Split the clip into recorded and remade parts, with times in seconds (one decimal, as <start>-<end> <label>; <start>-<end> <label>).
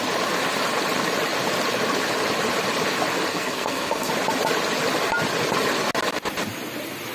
0.0-3.3 recorded; 3.3-4.1 remade; 4.1-7.1 recorded